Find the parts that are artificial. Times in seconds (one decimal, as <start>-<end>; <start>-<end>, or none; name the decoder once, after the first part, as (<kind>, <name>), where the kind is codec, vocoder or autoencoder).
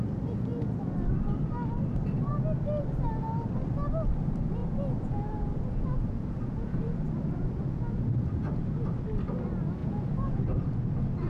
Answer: 4.6-7.9 (vocoder, Vocos); 9.8-10.4